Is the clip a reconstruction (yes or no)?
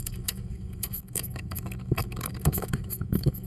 yes